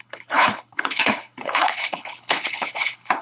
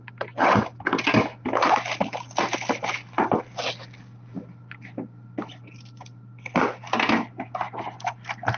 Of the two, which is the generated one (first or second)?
first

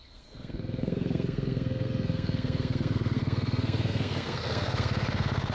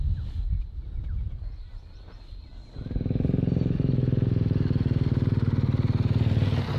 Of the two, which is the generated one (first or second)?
first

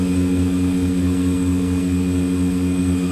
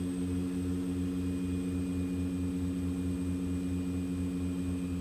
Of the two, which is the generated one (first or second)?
first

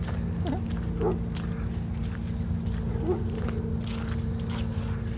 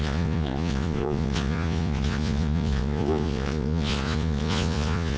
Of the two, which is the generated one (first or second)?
second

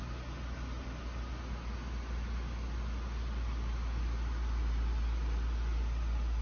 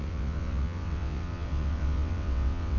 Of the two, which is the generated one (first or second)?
second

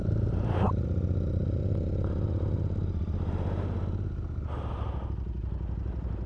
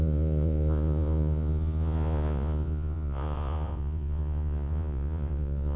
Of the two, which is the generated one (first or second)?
second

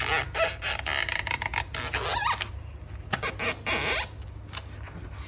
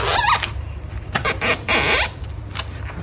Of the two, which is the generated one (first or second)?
second